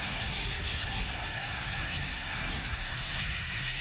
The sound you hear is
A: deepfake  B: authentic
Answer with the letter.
A